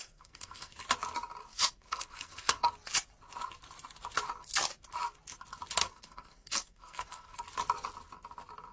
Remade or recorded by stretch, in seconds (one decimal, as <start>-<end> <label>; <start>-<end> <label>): 0.0-0.8 remade; 0.8-1.5 recorded; 1.5-2.7 remade; 2.7-5.8 recorded; 5.8-7.4 remade; 7.4-8.7 recorded